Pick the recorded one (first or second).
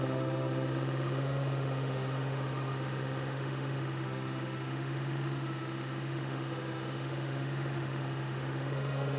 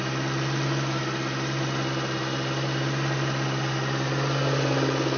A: second